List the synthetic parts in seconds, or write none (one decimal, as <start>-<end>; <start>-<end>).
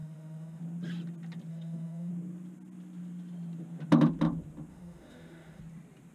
0.0-0.6; 1.5-2.1; 4.7-5.6